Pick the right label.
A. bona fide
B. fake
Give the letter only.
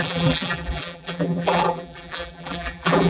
B